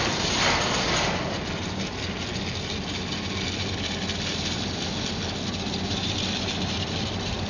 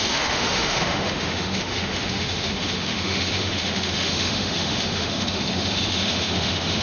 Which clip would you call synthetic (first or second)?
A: second